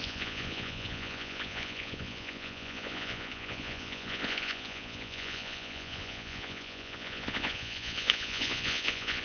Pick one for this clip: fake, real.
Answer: fake